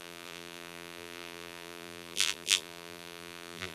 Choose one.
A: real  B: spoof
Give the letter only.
B